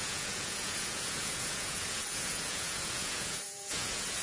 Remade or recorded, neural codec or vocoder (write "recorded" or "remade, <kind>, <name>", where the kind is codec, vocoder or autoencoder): remade, vocoder, Vocos